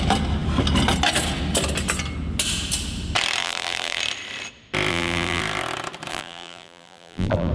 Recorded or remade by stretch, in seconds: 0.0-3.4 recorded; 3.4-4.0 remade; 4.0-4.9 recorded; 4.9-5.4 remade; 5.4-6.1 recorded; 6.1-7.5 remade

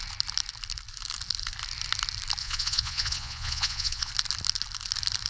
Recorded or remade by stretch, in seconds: 0.0-2.4 recorded; 2.4-4.1 remade; 4.1-5.3 recorded

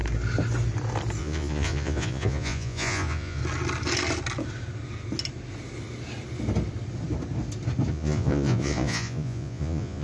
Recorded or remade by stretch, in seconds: 0.0-1.2 recorded; 1.2-3.4 remade; 3.4-7.9 recorded; 7.9-10.0 remade

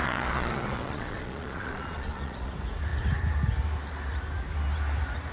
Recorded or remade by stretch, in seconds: 0.0-2.5 remade; 2.5-5.3 recorded

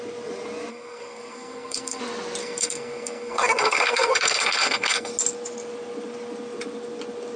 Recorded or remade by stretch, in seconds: 0.0-0.7 recorded; 0.7-2.0 remade; 2.0-2.4 recorded; 2.4-5.1 remade; 5.1-7.4 recorded

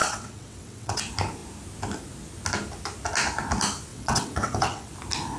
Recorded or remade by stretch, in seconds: 0.0-1.0 remade; 1.0-3.9 recorded; 3.9-4.9 remade; 4.9-5.4 recorded